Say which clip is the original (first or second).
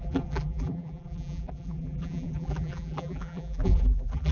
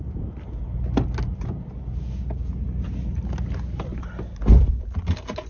second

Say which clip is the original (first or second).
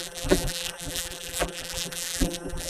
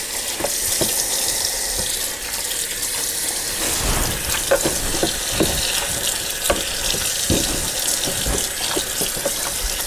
second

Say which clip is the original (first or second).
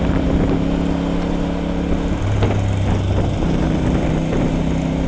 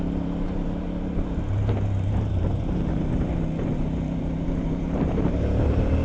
first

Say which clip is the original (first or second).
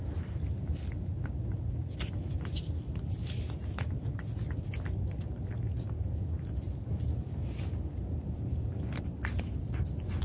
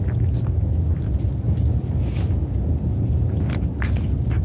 second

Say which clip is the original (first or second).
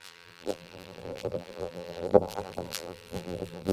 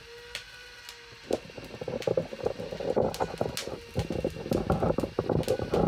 second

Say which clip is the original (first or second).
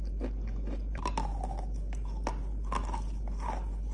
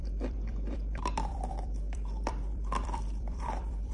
first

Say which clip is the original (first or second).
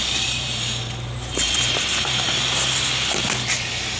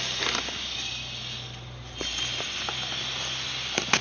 second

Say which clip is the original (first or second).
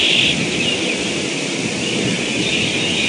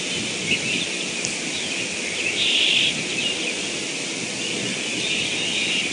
second